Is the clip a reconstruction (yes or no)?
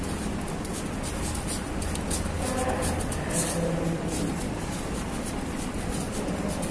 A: no